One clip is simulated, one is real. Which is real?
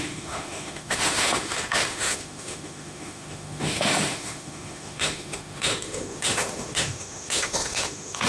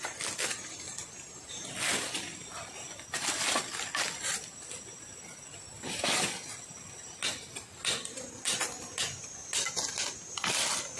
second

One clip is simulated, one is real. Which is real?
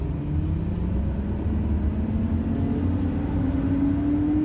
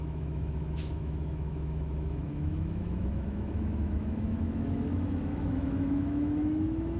first